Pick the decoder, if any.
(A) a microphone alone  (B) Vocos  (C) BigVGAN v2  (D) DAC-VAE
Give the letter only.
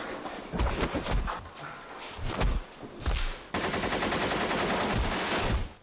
A